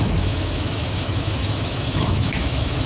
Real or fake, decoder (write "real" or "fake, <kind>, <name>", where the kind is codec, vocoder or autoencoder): fake, autoencoder, DAC-VAE